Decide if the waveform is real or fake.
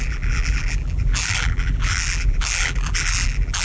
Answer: fake